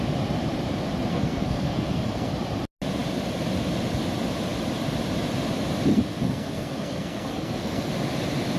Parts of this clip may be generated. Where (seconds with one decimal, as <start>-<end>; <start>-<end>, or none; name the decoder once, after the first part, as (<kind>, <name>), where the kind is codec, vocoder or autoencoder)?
1.1-2.3 (codec, SNAC); 5.9-7.9